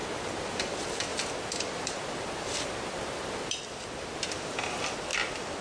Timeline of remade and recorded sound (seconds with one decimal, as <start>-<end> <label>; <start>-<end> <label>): 0.0-5.1 remade; 5.1-5.6 recorded